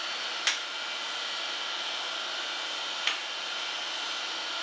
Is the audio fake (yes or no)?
no